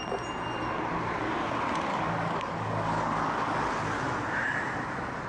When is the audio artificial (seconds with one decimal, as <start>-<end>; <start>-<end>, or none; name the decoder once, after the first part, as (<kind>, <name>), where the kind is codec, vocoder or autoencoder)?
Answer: 1.9-3.7 (codec, DAC)